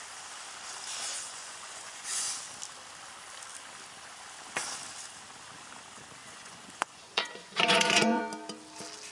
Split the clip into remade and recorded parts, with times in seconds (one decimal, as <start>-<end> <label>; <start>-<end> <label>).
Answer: 0.0-1.1 recorded; 1.1-2.3 remade; 2.3-6.2 recorded; 6.2-8.2 remade; 8.2-9.1 recorded